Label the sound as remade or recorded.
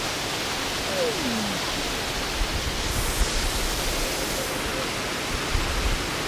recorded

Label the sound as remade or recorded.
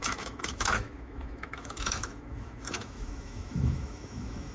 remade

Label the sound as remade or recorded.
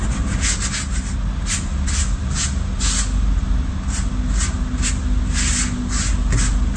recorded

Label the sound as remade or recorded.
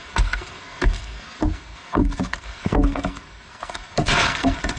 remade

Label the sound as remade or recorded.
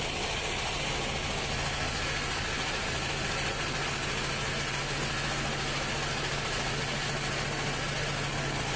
recorded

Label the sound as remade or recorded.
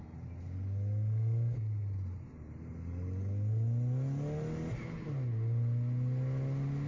recorded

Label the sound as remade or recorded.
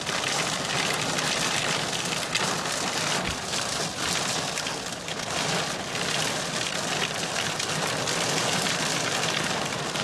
recorded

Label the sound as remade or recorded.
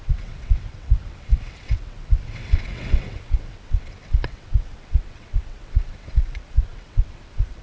remade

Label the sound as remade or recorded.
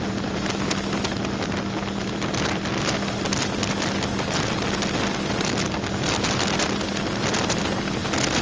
recorded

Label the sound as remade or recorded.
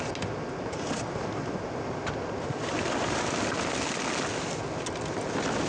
recorded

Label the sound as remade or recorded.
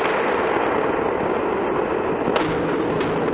recorded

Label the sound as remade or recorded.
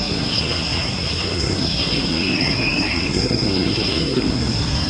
remade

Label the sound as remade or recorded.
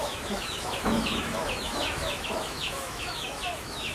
remade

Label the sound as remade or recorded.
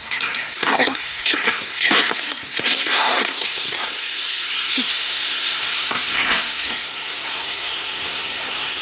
remade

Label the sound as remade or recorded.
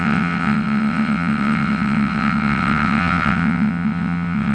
remade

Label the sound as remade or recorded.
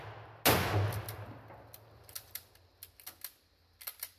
recorded